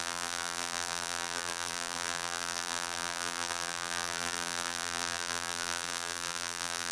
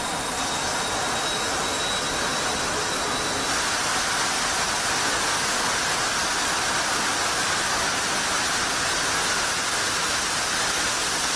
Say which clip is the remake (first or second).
first